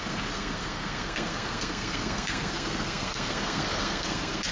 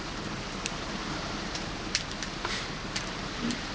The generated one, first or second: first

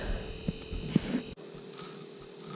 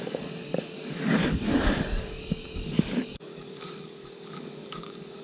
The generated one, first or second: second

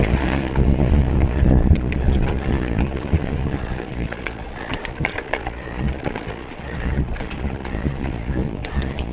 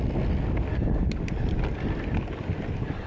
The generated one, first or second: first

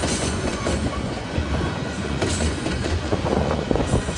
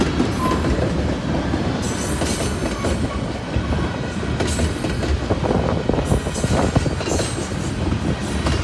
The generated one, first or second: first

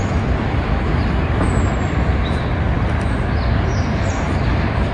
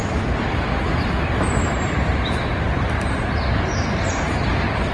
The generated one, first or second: second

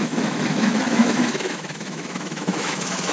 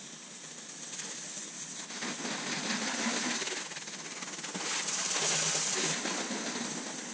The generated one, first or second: first